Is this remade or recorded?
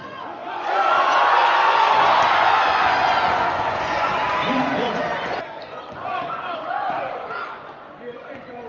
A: remade